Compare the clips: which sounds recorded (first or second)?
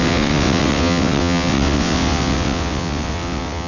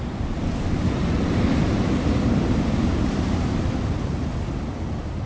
second